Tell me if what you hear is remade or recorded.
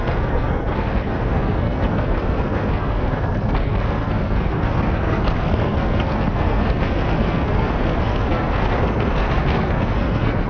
remade